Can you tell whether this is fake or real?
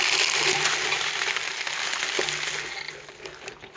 real